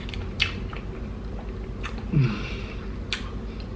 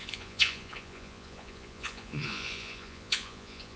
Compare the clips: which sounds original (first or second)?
first